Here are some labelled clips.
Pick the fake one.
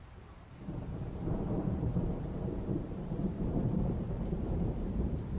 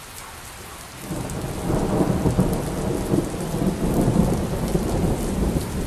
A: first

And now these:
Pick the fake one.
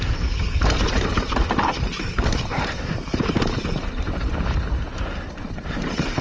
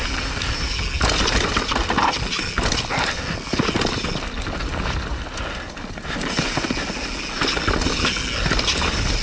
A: first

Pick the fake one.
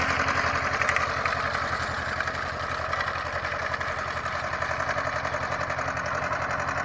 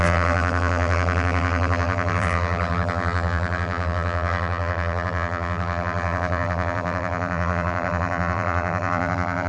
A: second